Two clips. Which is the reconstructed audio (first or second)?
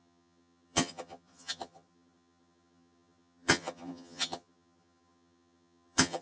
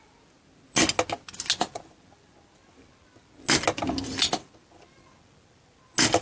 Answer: first